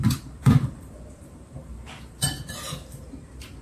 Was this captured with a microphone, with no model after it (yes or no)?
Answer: no